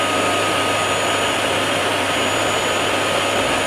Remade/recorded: recorded